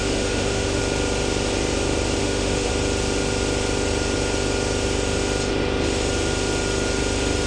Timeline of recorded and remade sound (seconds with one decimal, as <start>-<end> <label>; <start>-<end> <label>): 0.0-0.8 remade; 0.8-2.2 recorded; 2.2-2.7 remade; 2.7-7.5 recorded

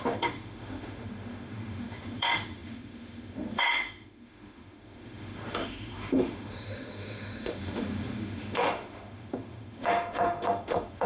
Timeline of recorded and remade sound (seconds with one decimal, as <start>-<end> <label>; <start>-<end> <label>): 0.0-11.1 remade

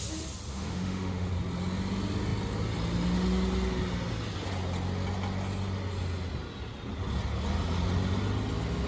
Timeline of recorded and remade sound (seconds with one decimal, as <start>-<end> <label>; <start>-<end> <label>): 0.0-0.5 recorded; 0.5-1.3 remade; 1.3-8.9 recorded

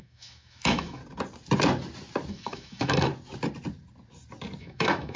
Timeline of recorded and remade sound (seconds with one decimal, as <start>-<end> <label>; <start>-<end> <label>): 0.0-1.0 remade; 1.0-2.3 recorded; 2.3-3.1 remade; 3.1-4.6 recorded; 4.6-5.2 remade